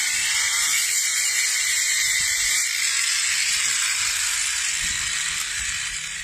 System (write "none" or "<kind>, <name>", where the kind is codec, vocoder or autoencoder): vocoder, BigVGAN v2